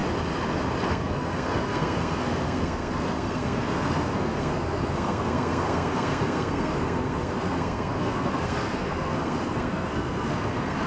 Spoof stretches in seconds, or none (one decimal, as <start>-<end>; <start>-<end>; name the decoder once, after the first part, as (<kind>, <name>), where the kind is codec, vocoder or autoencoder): 0.9-10.9 (codec, SNAC)